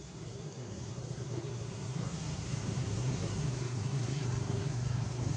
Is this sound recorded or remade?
remade